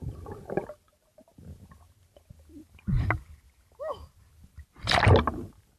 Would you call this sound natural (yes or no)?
yes